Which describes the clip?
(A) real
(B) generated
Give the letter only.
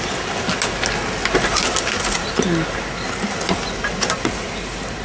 A